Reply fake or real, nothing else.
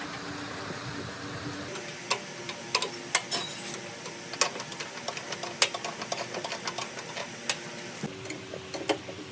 real